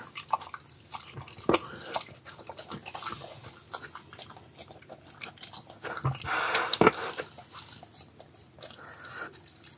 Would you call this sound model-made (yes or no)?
no